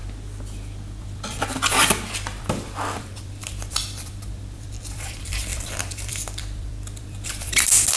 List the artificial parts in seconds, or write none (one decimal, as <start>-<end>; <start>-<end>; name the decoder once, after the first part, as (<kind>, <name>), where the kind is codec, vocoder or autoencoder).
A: 1.0-8.0 (vocoder, BigVGAN v2)